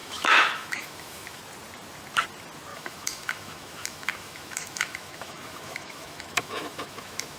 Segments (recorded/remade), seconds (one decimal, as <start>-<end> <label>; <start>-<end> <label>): 0.0-1.4 remade; 1.4-2.7 recorded; 2.7-7.4 remade